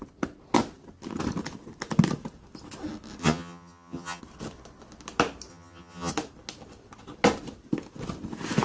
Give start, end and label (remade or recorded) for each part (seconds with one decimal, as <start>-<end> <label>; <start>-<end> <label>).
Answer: 0.0-3.2 recorded; 3.2-4.2 remade; 4.2-5.5 recorded; 5.5-6.1 remade; 6.1-8.6 recorded